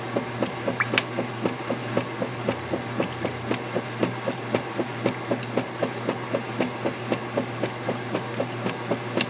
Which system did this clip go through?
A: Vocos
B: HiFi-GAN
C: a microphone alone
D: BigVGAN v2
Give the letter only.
C